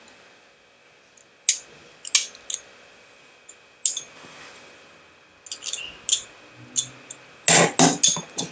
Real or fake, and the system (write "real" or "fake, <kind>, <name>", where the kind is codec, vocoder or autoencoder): real